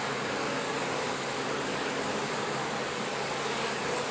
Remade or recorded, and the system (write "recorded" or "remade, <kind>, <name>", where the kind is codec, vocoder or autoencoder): remade, codec, DAC